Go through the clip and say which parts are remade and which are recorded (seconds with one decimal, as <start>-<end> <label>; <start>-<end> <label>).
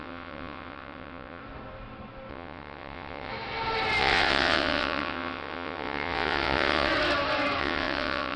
0.0-1.4 remade; 1.4-2.3 recorded; 2.3-3.3 remade; 3.3-4.0 recorded; 4.0-6.9 remade; 6.9-7.6 recorded; 7.6-8.4 remade